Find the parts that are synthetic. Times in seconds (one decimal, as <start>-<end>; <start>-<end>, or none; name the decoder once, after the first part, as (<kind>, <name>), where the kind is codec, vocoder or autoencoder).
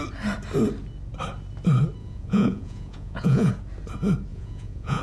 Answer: 2.0-3.5 (vocoder, Vocos); 4.3-5.0